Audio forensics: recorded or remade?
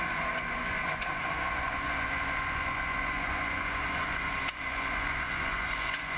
remade